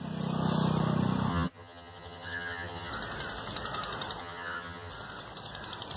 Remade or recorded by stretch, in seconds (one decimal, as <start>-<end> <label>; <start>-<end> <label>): 0.0-1.3 recorded; 1.3-2.9 remade; 2.9-4.2 recorded; 4.2-4.9 remade; 4.9-6.0 recorded